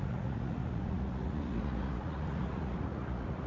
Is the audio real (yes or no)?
no